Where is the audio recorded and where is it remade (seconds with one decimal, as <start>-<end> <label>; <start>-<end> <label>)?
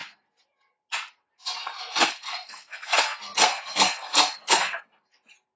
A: 0.0-1.6 recorded; 1.6-5.0 remade; 5.0-5.6 recorded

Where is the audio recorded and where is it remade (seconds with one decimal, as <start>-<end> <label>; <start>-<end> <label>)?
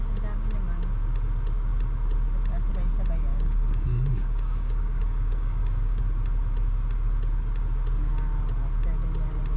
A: 0.0-3.3 recorded; 3.3-6.0 remade; 6.0-9.6 recorded